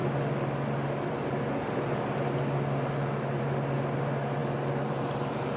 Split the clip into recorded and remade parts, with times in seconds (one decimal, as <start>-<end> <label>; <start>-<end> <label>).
0.0-5.6 recorded